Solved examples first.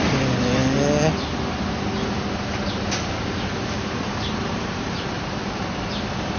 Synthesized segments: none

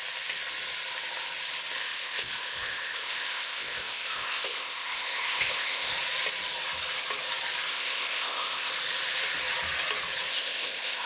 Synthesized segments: 1.8-5.9 (codec, ZipCodec); 7.7-8.7; 10.3-11.1

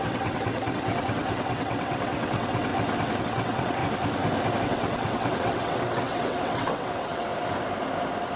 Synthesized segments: 0.0-2.7 (vocoder, WaveNeXt); 3.2-3.8; 4.6-7.3

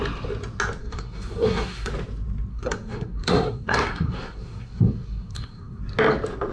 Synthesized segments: 0.8-1.9 (codec, SNAC); 2.5-5.8

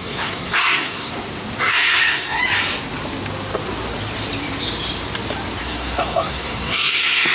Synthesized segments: 0.0-1.1 (codec, SNAC); 1.6-2.4; 5.6-7.3

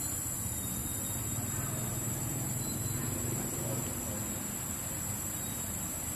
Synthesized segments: none

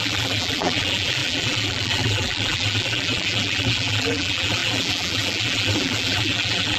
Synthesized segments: 0.0-6.8 (vocoder, BigVGAN v2)

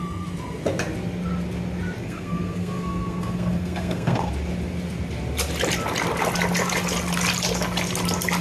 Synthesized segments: 2.0-4.3 (codec, SNAC)